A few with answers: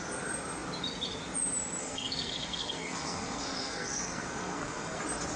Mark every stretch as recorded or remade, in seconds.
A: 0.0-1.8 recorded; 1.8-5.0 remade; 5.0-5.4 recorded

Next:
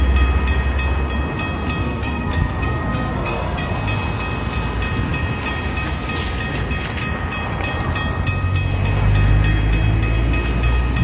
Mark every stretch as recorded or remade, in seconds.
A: 0.0-1.8 recorded; 1.8-3.7 remade; 3.7-11.0 recorded

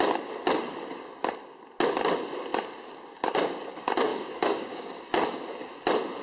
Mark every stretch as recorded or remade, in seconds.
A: 0.0-4.1 recorded; 4.1-4.9 remade; 4.9-6.2 recorded